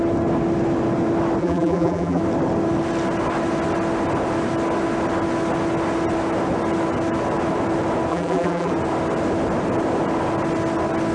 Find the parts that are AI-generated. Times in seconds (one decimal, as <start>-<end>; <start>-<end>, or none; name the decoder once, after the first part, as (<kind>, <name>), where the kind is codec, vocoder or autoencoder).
1.4-2.2 (vocoder, BigVGAN v2); 8.1-8.7